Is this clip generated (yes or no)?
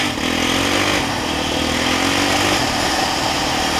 no